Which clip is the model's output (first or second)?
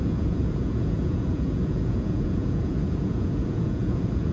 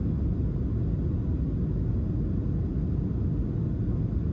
first